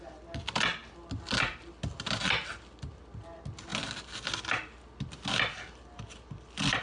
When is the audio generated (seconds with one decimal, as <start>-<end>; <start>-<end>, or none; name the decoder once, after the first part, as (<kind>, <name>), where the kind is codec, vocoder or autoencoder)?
none